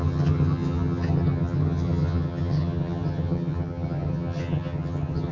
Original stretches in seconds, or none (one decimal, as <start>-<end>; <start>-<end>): none